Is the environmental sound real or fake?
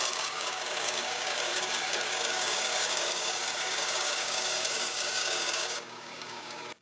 fake